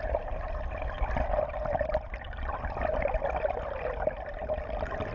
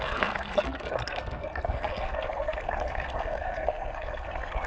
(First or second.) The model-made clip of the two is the second